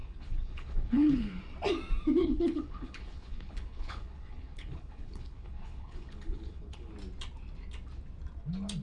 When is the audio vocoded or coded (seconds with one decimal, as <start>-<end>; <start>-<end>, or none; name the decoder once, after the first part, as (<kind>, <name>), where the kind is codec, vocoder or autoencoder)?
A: 0.0-1.4 (codec, HILCodec); 2.2-6.9